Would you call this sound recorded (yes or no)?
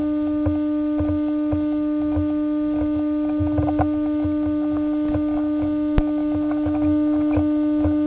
yes